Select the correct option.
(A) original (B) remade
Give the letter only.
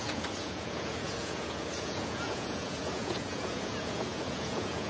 B